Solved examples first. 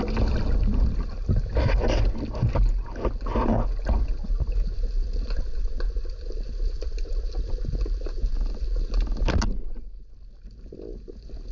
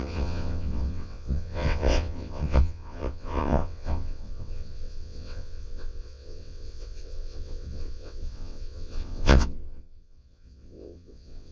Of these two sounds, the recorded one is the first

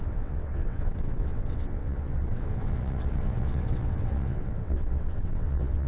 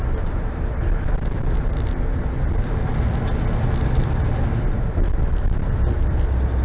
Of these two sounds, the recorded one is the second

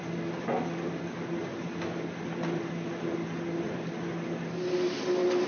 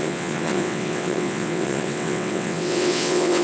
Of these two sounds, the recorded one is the first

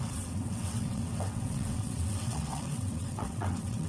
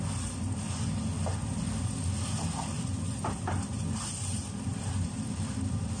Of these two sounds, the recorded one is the second